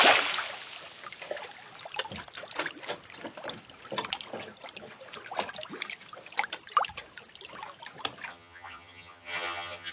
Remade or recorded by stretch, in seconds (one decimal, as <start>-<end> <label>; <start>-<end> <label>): 0.0-8.3 recorded; 8.3-9.9 remade